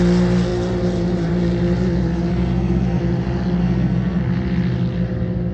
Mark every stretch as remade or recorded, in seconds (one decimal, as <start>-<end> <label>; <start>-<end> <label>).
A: 0.0-2.3 recorded; 2.3-3.0 remade; 3.0-3.6 recorded; 3.6-4.2 remade; 4.2-5.5 recorded